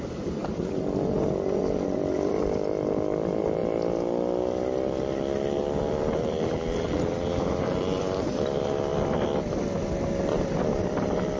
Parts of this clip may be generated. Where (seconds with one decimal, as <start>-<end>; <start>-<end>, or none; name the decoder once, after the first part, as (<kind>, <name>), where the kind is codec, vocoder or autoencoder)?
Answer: 0.0-3.6 (vocoder, BigVGAN v2); 6.2-8.9; 10.8-11.4